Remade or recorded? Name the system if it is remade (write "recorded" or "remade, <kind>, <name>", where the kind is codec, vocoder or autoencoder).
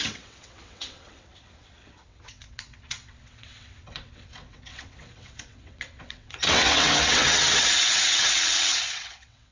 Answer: remade, vocoder, WaveNeXt